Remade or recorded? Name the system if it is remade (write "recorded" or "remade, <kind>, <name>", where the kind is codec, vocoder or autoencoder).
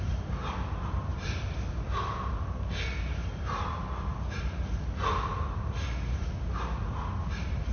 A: recorded